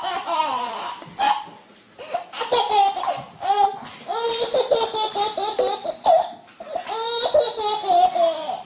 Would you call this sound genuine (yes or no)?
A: yes